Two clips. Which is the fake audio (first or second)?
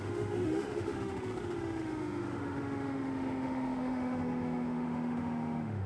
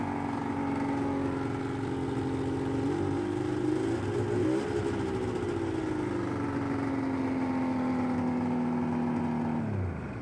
first